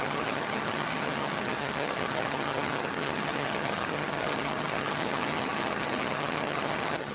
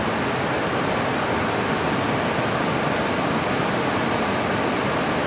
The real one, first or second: second